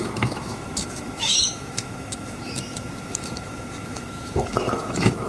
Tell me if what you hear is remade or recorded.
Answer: remade